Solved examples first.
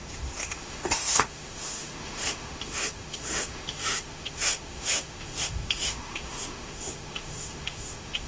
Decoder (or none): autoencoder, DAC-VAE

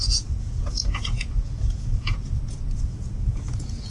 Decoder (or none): vocoder, Vocos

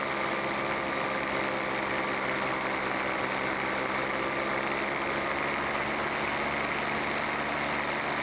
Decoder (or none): none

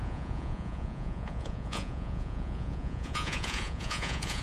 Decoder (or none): vocoder, Vocos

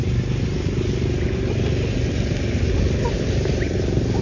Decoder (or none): none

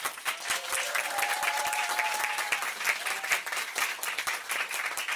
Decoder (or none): none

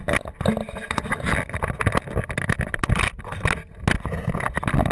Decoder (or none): none